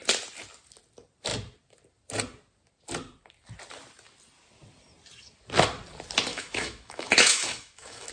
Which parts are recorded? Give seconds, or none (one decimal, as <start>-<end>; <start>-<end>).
0.0-6.3